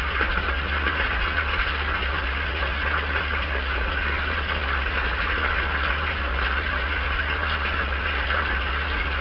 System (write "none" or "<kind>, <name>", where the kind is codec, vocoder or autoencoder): vocoder, Vocos